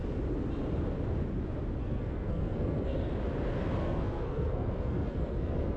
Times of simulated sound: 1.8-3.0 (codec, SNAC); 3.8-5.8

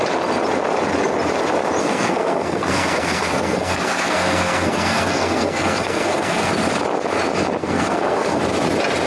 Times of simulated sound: 1.8-6.5 (codec, SNAC); 7.6-8.4

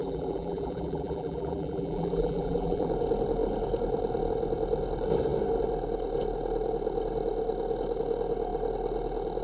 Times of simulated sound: 0.0-2.9 (vocoder, BigVGAN v2)